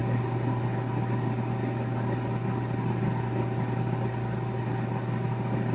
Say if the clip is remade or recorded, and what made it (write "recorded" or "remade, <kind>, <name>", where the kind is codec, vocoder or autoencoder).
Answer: recorded